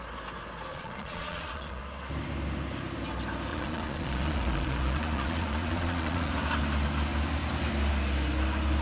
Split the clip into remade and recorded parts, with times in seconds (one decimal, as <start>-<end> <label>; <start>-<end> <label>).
0.0-0.7 recorded; 0.7-1.8 remade; 1.8-3.5 recorded; 3.5-6.3 remade; 6.3-8.8 recorded